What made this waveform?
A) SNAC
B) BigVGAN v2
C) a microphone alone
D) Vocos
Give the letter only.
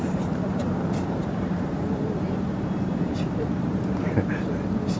B